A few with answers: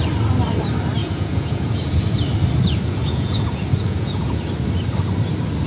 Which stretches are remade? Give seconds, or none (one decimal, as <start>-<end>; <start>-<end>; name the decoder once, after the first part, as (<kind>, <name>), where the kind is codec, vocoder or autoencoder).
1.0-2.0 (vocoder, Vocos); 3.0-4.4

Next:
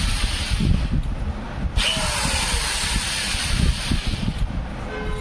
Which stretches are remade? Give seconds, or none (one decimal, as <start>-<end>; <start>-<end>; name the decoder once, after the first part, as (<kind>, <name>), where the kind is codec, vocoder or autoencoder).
none

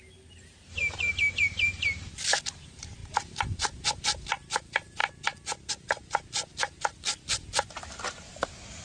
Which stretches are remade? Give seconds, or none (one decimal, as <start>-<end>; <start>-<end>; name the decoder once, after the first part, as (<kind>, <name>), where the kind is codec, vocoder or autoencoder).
none

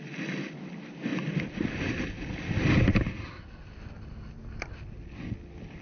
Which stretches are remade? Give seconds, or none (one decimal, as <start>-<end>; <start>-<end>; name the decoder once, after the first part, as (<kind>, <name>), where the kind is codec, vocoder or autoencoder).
none